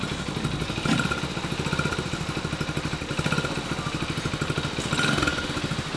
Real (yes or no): yes